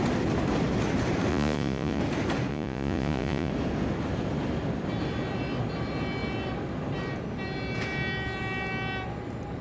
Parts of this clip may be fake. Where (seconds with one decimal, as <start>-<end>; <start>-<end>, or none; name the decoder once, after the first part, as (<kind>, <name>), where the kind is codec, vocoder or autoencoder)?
1.3-2.0 (vocoder, Vocos); 2.5-3.5